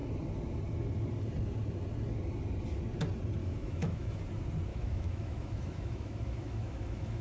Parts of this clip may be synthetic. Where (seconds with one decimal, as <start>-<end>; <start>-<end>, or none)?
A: 3.4-4.2; 4.7-7.2